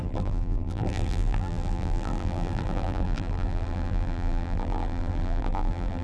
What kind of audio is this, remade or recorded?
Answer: remade